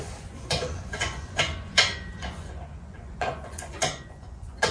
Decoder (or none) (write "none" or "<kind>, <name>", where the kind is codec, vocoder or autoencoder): vocoder, Vocos